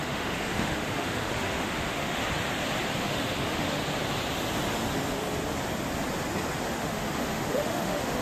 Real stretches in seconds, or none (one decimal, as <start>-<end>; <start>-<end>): 2.2-3.0; 3.8-6.7